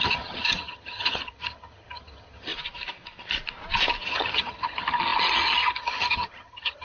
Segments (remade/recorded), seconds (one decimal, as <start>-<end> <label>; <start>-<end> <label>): 0.0-2.5 remade; 2.5-4.0 recorded; 4.0-6.8 remade